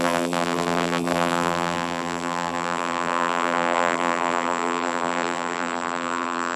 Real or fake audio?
fake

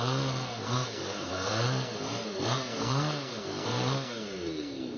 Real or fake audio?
fake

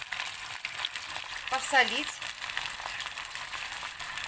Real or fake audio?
real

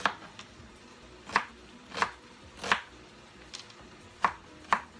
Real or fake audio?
real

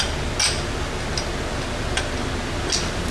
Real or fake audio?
real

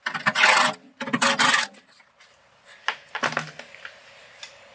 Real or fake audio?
real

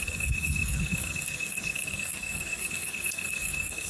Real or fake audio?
fake